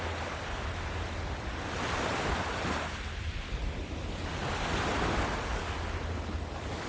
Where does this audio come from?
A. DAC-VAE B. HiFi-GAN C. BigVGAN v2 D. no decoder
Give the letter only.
D